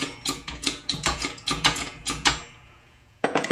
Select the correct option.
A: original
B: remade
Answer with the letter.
B